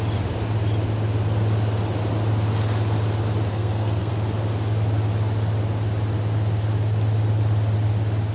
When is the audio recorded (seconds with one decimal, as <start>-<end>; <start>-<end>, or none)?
0.0-3.5; 4.1-8.3